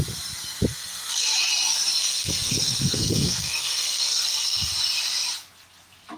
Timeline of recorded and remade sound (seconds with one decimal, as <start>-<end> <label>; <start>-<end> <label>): 0.0-0.7 recorded; 0.7-1.3 remade; 1.3-2.0 recorded; 2.0-4.7 remade; 4.7-6.2 recorded